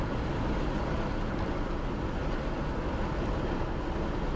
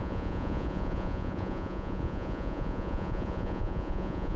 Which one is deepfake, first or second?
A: second